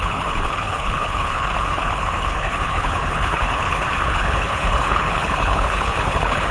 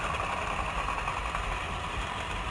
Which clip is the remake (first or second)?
first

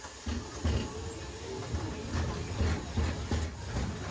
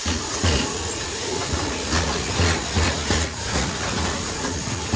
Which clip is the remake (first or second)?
second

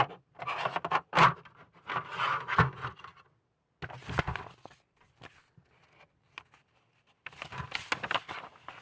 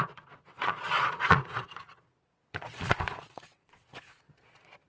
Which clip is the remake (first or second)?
second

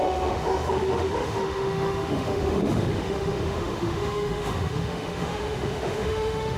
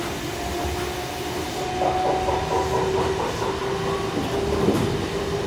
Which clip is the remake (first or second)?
first